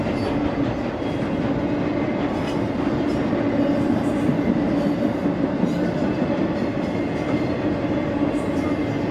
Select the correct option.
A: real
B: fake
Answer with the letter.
A